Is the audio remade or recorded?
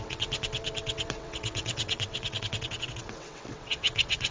remade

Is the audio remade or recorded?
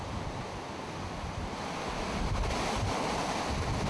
recorded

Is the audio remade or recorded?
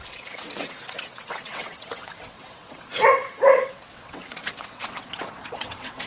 remade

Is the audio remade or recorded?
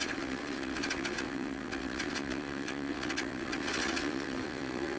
remade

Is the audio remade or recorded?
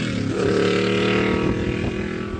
recorded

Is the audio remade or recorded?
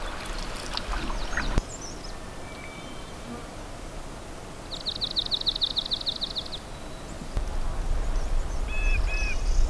recorded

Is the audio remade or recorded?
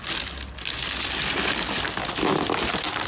recorded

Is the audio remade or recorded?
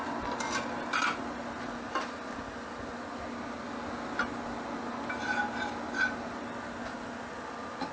recorded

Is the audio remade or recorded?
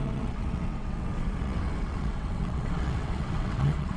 remade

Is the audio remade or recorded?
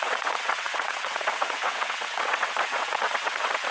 remade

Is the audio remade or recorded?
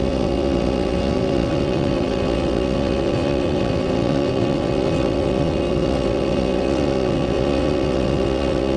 remade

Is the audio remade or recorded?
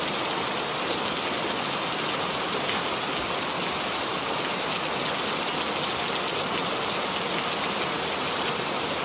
recorded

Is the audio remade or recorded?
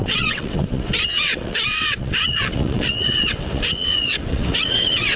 remade